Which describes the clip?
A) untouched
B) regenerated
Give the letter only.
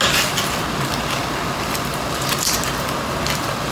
A